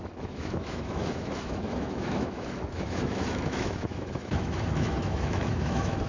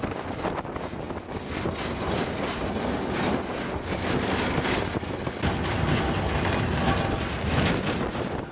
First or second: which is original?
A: second